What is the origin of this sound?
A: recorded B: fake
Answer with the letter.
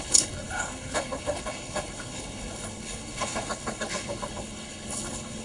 B